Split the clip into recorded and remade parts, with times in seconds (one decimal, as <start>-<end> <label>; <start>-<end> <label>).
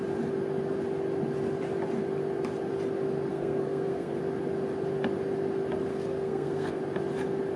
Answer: 0.0-3.3 recorded; 3.3-4.2 remade; 4.2-5.9 recorded; 5.9-6.8 remade; 6.8-7.6 recorded